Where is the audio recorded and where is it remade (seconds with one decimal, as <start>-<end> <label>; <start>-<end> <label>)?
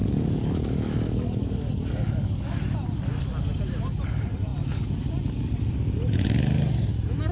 0.0-2.6 remade; 2.6-7.3 recorded